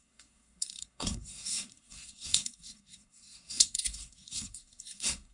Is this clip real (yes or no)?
no